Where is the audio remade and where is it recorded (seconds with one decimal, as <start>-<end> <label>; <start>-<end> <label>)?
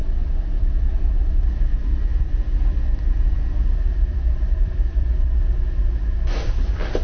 0.0-1.3 remade; 1.3-2.1 recorded; 2.1-5.4 remade; 5.4-7.0 recorded